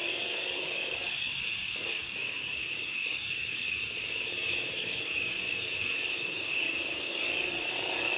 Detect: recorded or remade remade